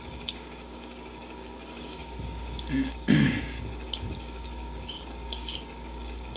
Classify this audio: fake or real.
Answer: fake